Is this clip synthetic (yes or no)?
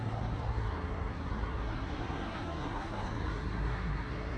yes